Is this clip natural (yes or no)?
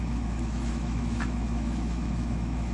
no